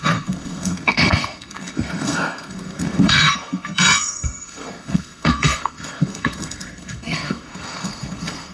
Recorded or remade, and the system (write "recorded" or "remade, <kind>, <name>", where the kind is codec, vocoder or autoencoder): remade, codec, SNAC